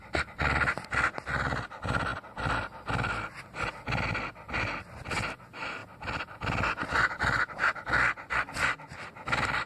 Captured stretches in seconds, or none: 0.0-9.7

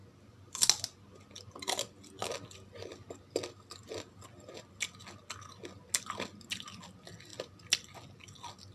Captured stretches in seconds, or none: 0.0-8.7

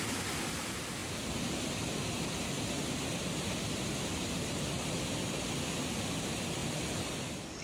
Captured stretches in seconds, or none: 0.0-7.6

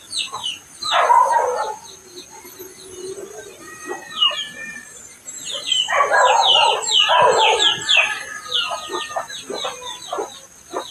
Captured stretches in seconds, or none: 0.0-0.4; 1.8-4.0; 5.4-10.9

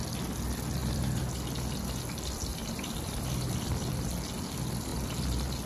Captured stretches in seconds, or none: 0.0-0.8; 1.3-2.5; 3.9-5.7

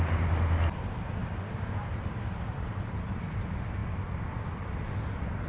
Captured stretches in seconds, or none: 0.0-1.2; 3.2-5.5

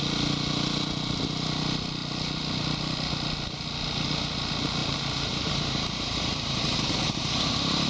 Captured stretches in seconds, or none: 0.0-4.8

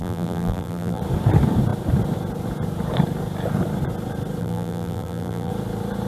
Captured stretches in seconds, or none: 1.0-4.4; 5.5-6.1